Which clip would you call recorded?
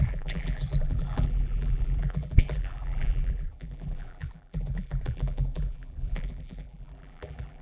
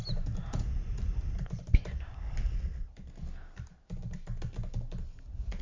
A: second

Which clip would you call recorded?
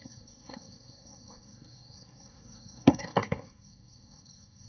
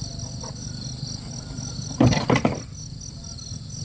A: second